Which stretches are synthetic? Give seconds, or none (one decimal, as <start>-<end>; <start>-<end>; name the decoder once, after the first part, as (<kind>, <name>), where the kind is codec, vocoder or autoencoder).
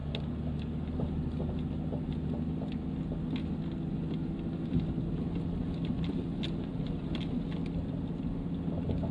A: none